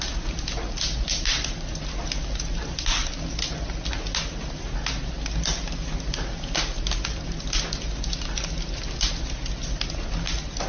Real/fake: real